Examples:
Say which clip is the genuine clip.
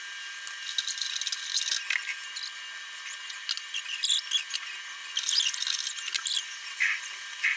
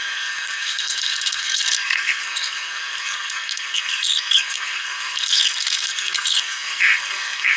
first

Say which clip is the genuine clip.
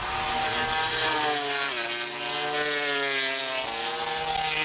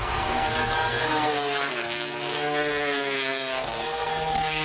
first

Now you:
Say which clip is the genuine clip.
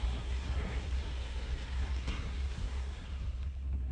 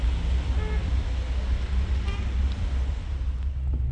second